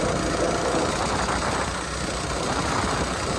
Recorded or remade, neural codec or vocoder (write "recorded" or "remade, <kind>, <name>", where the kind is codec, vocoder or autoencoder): recorded